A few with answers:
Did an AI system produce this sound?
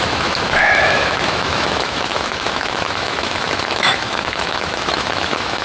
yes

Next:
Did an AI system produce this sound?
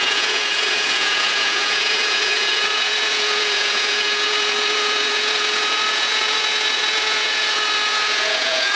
yes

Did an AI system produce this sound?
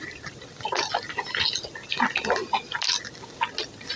no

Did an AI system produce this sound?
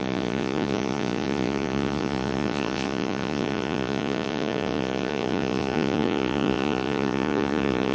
yes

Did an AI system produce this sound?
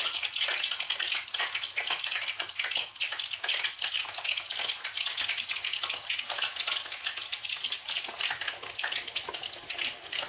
no